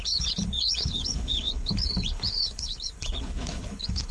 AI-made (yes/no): yes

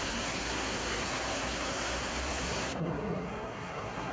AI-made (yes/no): yes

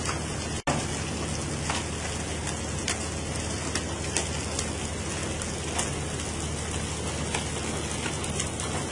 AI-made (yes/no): no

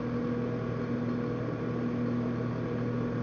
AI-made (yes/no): no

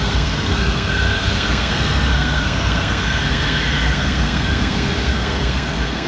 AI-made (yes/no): yes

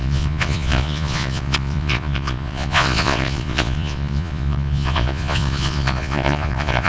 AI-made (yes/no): yes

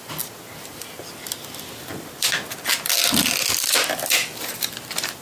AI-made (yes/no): no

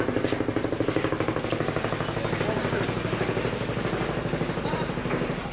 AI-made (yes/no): no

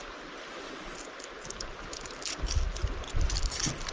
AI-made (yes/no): no